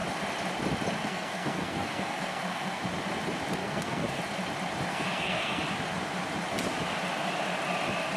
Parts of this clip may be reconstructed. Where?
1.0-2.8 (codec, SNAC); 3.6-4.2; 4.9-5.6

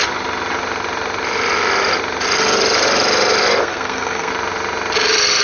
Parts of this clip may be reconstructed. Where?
3.6-4.3 (codec, SNAC)

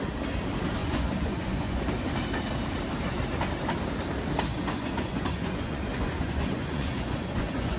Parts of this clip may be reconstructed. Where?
0.8-1.8 (vocoder, Vocos); 4.5-7.8

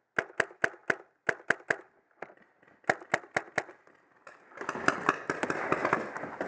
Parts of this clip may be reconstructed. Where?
none

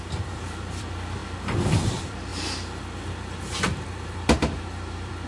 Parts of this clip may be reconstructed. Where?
0.0-1.2 (vocoder, BigVGAN v2); 1.7-2.3; 3.4-5.3

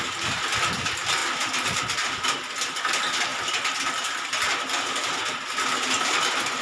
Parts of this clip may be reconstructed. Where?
none

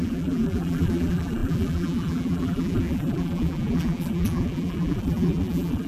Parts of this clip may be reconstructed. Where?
0.0-5.9 (vocoder, BigVGAN v2)

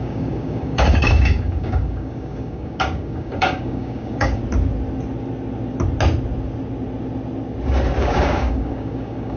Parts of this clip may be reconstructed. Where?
0.0-4.4 (codec, DAC); 8.0-9.4